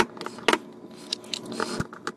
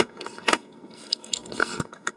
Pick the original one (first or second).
first